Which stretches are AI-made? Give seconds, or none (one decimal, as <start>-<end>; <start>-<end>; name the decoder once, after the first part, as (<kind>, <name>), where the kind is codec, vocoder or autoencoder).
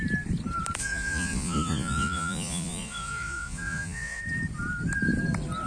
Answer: 0.8-4.2 (vocoder, Vocos)